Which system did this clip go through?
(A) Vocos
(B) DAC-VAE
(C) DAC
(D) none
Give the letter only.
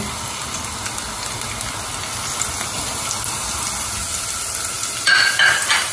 D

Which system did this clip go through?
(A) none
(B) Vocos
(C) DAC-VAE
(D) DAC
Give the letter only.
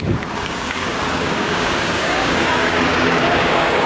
D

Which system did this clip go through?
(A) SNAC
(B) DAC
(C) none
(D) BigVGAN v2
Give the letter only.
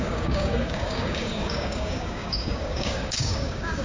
B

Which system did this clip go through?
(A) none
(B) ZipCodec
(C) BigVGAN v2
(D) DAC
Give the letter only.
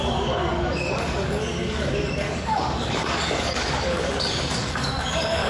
D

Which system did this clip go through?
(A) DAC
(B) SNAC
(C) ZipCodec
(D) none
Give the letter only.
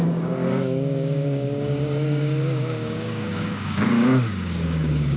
A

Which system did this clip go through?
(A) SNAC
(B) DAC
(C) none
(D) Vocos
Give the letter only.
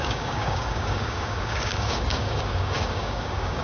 B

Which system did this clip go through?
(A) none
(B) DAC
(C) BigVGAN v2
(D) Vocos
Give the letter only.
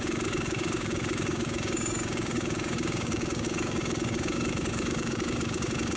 B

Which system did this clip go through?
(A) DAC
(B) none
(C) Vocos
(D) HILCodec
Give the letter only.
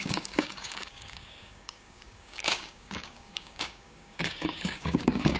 A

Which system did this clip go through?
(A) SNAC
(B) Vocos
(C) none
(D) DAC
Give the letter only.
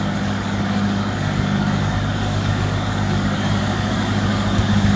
D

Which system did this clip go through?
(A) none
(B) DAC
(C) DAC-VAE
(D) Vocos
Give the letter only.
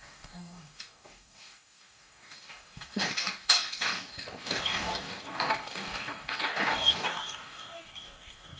B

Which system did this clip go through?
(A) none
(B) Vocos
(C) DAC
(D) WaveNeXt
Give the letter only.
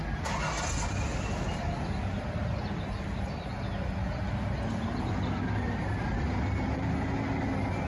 A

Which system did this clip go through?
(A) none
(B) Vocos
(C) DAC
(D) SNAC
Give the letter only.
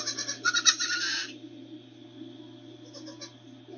A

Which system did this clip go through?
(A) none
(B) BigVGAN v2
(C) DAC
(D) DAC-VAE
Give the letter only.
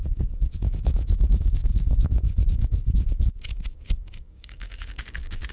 C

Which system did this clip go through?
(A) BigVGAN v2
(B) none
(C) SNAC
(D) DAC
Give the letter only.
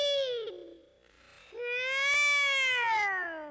B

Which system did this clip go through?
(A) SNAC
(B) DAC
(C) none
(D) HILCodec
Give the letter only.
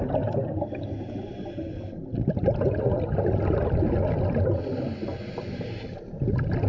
C